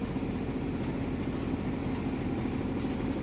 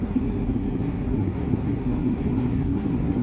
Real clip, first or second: first